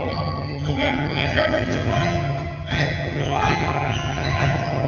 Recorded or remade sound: remade